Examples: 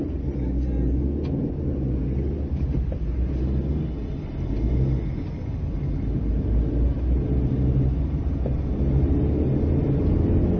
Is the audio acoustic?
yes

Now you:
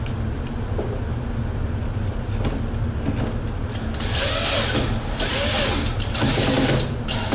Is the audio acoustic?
yes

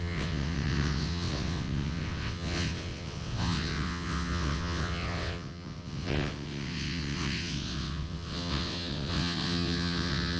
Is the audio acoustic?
no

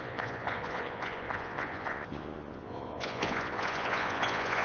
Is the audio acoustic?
no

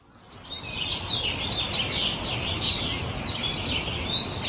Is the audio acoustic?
yes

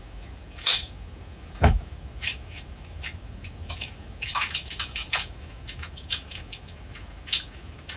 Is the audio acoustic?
no